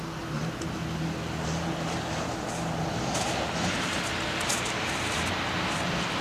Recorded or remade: recorded